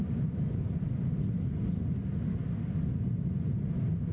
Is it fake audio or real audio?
real